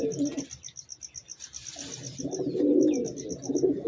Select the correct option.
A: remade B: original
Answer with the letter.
B